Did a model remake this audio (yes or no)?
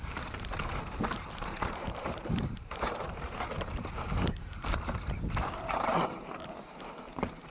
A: yes